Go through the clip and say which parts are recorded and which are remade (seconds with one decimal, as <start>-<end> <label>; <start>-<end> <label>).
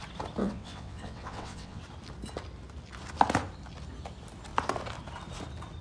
0.0-0.4 recorded; 0.4-1.8 remade; 1.8-5.8 recorded